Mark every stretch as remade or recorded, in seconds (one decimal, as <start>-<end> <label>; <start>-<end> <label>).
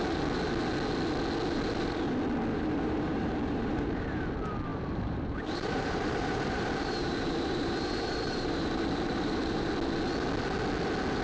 0.0-2.5 recorded; 2.5-4.3 remade; 4.3-4.7 recorded; 4.7-9.7 remade; 9.7-11.2 recorded